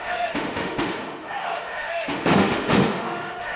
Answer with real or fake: fake